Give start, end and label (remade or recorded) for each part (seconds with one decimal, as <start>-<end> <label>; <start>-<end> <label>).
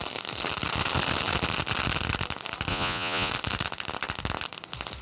0.0-2.7 recorded; 2.7-3.3 remade; 3.3-5.0 recorded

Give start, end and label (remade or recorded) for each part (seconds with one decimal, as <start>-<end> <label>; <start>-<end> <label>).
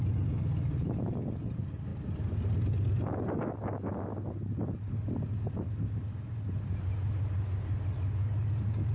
0.0-8.9 recorded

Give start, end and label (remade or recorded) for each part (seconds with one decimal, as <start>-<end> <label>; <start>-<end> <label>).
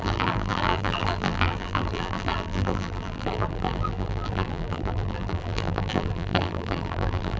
0.0-7.4 remade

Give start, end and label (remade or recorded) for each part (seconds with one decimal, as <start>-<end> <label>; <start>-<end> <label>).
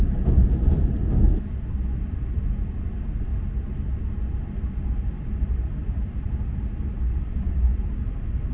0.0-8.5 recorded